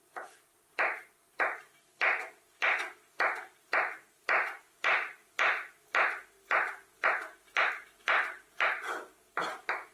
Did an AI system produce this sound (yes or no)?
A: no